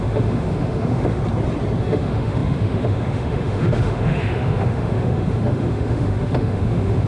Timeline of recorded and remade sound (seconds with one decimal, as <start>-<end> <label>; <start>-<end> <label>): 0.0-1.2 remade; 1.2-1.8 recorded; 1.8-7.1 remade